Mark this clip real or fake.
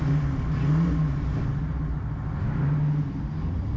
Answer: real